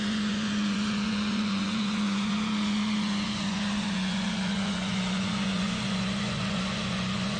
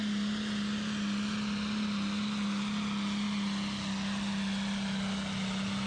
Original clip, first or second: second